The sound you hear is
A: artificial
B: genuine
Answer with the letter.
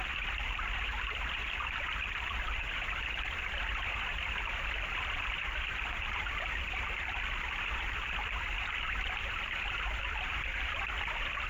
A